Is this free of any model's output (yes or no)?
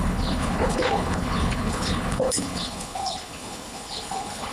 no